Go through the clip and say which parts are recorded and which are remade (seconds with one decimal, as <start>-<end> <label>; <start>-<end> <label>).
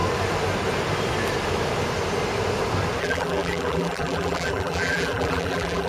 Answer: 0.0-3.0 recorded; 3.0-5.9 remade